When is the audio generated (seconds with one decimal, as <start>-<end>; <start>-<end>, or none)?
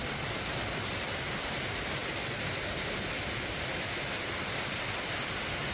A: none